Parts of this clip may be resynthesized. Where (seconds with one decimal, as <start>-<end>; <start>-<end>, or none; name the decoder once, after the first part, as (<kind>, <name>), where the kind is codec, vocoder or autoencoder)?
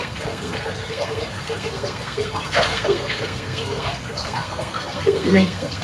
0.0-5.8 (codec, SNAC)